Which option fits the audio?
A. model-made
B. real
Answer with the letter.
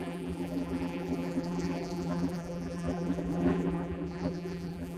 A